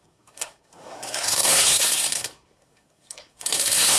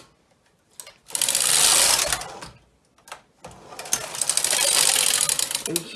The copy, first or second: first